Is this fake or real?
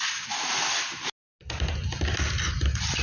real